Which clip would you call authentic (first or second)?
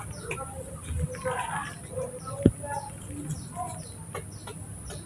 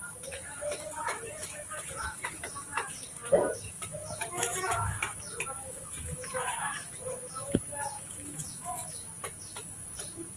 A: first